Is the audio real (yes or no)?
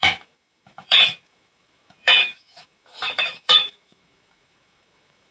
no